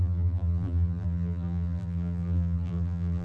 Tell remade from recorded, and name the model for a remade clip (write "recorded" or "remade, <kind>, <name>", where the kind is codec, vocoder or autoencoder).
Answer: remade, vocoder, BigVGAN v2